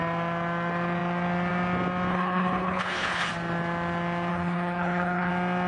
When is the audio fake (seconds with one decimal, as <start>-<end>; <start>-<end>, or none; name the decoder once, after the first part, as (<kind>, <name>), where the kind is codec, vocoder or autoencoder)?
2.1-3.3 (codec, HILCodec); 4.3-5.3